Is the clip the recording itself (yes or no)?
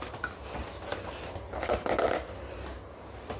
yes